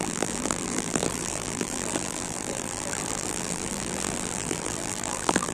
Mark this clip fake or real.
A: fake